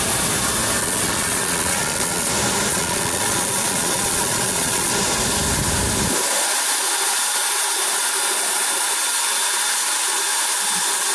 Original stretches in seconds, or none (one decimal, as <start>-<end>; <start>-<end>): 0.0-0.8; 2.3-2.7; 4.9-11.1